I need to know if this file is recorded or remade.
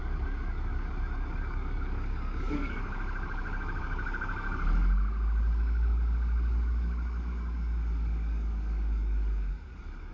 remade